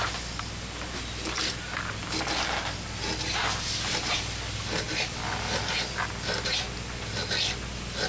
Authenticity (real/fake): real